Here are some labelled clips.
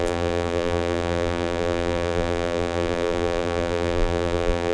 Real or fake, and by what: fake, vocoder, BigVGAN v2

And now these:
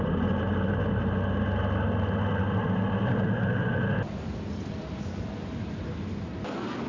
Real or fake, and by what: real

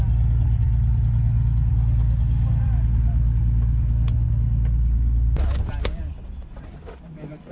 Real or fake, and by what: real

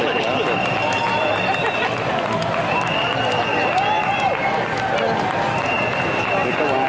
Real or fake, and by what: real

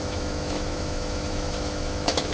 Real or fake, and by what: fake, autoencoder, DAC-VAE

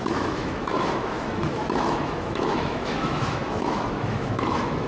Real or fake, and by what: fake, autoencoder, DAC-VAE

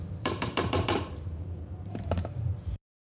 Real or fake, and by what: fake, vocoder, BigVGAN v2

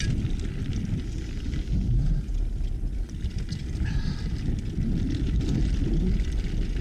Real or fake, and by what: real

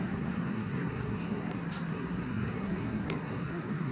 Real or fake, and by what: fake, codec, SNAC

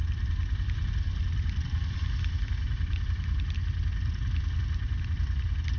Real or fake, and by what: real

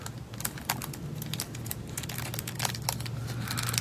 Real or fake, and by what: real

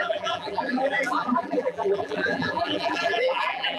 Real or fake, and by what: fake, vocoder, BigVGAN v2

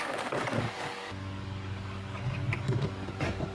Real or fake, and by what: fake, codec, DAC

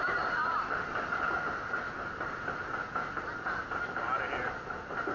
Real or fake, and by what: real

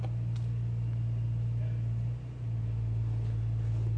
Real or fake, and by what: real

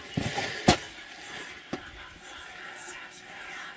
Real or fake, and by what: real